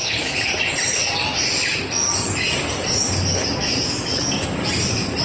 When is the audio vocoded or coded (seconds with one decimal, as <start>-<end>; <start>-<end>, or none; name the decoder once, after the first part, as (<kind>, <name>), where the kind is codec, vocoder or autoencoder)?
4.1-4.7 (codec, DAC)